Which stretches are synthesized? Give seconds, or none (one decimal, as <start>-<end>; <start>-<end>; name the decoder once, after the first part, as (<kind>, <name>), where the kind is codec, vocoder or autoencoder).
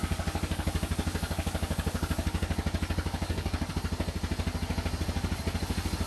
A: 0.0-3.7 (codec, DAC)